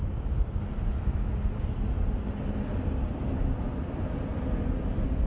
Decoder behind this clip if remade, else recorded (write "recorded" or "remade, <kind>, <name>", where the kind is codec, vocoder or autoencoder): recorded